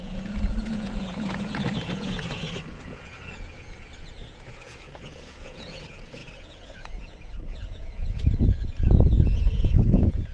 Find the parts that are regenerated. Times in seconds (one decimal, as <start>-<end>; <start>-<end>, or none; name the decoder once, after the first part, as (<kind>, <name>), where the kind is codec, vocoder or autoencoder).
0.0-10.3 (vocoder, Vocos)